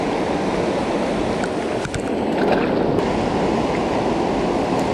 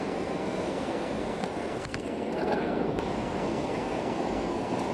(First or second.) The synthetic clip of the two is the second